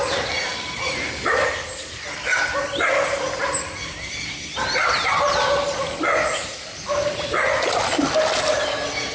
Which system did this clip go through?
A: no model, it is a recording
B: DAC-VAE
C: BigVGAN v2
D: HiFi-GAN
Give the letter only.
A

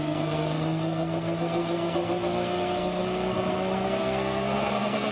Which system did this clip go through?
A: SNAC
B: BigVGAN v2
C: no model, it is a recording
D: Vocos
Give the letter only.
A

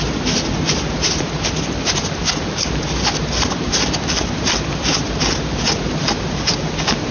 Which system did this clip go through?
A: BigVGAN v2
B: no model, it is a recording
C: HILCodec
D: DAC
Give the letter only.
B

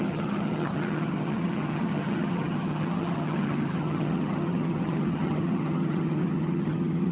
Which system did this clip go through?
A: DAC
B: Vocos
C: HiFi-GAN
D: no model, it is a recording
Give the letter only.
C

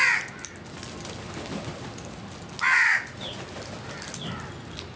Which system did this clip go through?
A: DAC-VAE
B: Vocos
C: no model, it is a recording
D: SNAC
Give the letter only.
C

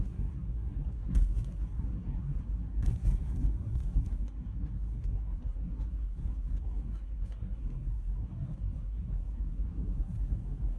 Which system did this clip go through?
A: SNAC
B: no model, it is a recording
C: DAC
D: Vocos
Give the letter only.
A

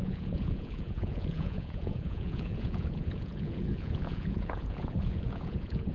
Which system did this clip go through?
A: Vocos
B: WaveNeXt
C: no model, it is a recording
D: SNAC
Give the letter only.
A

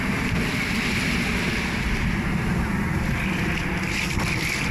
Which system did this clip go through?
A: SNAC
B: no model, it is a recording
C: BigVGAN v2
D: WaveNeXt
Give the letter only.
C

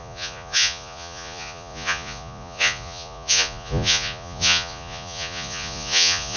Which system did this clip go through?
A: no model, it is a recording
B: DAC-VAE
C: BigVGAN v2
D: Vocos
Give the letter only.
D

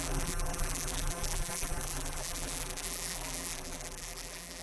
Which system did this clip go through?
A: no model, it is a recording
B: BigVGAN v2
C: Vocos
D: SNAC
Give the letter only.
B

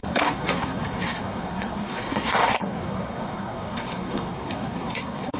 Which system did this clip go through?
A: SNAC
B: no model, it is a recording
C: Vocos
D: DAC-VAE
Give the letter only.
A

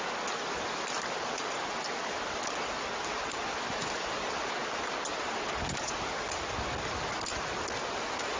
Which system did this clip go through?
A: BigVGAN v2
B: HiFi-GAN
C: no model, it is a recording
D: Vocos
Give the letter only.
C